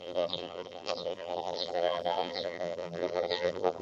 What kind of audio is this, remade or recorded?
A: remade